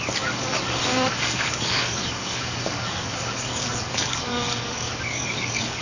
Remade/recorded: remade